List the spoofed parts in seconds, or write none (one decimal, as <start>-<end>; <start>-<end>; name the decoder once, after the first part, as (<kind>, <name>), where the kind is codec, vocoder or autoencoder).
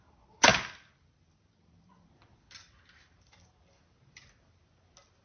0.5-2.1 (vocoder, BigVGAN v2)